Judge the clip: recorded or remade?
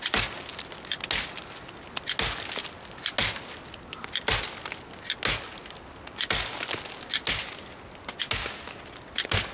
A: recorded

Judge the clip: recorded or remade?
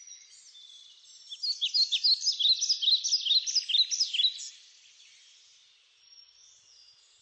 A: recorded